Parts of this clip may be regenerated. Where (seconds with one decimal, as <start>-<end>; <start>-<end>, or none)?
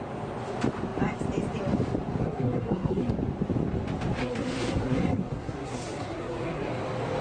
2.2-3.1; 4.2-6.7